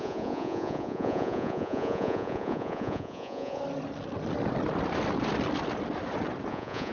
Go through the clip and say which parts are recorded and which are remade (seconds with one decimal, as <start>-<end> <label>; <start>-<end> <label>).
0.0-3.6 remade; 3.6-6.5 recorded; 6.5-6.9 remade